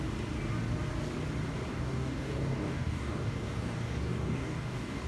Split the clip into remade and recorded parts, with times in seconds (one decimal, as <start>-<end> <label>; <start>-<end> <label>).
0.0-1.7 recorded; 1.7-5.1 remade